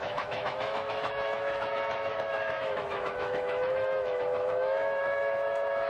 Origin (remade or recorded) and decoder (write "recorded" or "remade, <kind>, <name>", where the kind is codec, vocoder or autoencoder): remade, autoencoder, DAC-VAE